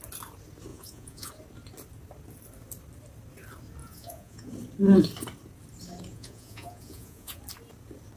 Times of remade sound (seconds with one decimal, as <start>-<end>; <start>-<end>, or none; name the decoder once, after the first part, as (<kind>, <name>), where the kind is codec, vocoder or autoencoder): 0.7-1.3 (vocoder, Vocos); 3.8-4.5; 6.1-7.4